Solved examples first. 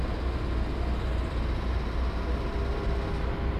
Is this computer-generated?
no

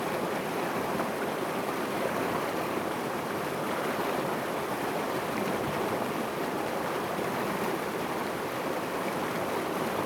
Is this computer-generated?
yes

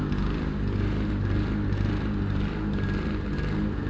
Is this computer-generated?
no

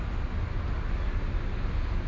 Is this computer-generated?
no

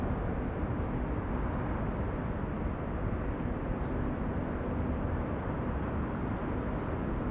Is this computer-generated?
no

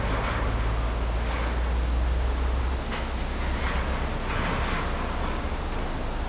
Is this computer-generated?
no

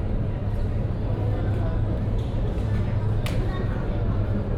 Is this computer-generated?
no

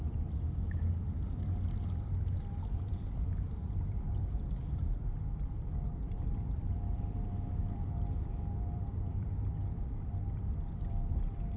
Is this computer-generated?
yes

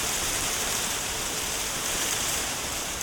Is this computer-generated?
yes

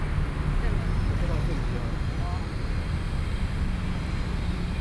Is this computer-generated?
no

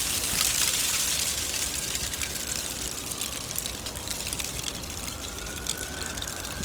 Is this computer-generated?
no